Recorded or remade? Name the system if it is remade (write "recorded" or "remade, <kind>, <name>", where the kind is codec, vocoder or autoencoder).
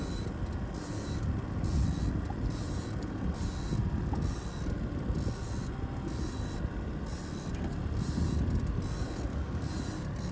recorded